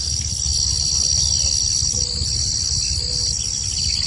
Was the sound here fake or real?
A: real